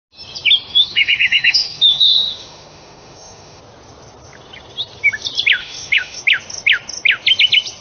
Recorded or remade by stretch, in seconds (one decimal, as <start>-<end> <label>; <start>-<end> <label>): 0.0-0.7 recorded; 0.7-3.6 remade; 3.6-5.6 recorded; 5.6-6.2 remade; 6.2-7.8 recorded